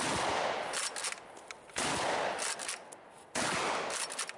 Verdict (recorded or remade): recorded